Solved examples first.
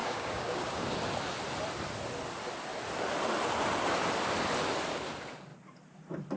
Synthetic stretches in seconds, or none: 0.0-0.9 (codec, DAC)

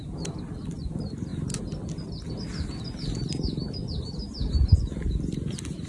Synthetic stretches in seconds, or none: none

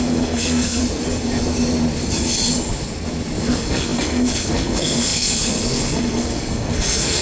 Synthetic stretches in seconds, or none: 0.0-0.8 (codec, SNAC); 3.4-7.2

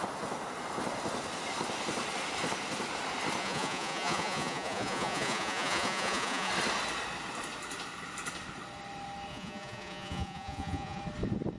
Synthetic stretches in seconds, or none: 3.4-6.5 (vocoder, Vocos); 9.3-11.0

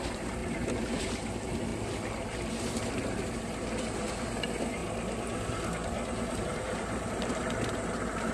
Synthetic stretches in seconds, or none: 0.0-0.4 (vocoder, BigVGAN v2); 1.0-1.7; 2.5-4.8; 6.4-8.3

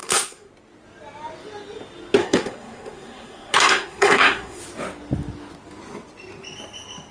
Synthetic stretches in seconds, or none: 0.0-0.5 (codec, SNAC); 2.2-4.6

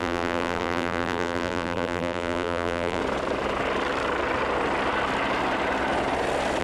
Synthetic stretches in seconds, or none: 0.0-3.0 (vocoder, BigVGAN v2)